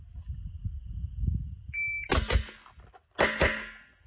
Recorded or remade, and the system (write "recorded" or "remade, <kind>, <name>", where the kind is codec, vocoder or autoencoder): recorded